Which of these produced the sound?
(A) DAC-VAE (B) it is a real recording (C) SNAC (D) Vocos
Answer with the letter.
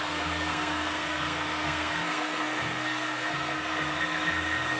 C